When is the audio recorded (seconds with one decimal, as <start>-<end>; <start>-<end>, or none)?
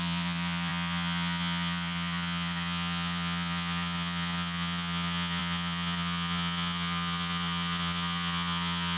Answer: none